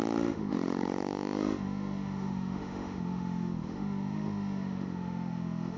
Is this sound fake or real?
fake